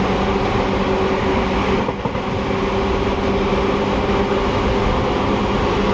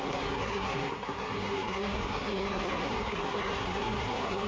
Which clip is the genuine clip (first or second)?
first